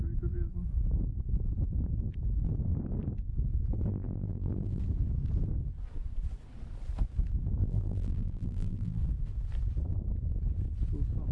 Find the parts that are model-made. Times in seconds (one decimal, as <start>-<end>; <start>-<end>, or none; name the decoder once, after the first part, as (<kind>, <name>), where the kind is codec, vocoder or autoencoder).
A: 3.9-4.8 (vocoder, BigVGAN v2); 7.6-9.0